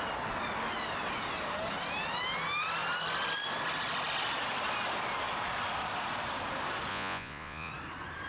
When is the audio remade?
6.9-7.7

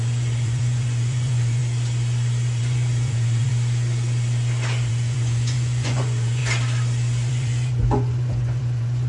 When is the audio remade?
0.0-1.6; 2.6-3.5; 4.9-6.4; 7.3-9.1

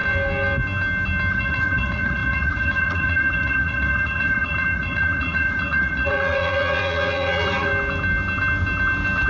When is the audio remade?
1.3-7.7

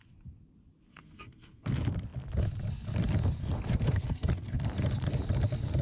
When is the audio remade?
0.9-1.7; 3.4-4.6

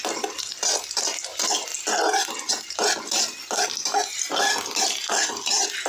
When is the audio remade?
none

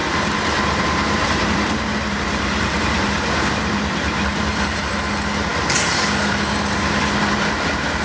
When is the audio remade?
0.0-4.8

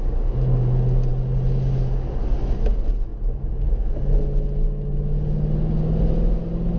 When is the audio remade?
none